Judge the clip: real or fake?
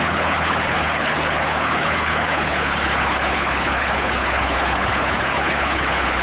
fake